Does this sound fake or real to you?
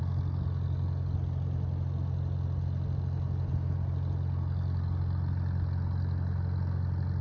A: real